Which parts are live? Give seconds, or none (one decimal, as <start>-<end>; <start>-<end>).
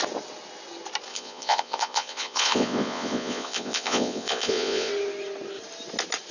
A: 0.0-1.1; 4.9-6.3